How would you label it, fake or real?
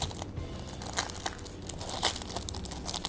real